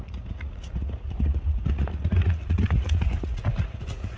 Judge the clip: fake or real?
fake